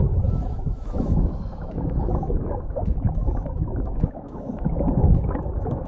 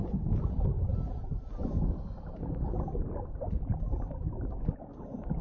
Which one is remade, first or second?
first